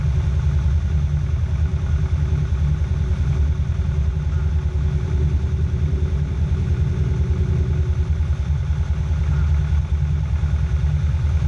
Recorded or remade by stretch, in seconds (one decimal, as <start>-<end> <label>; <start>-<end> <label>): 0.0-11.5 recorded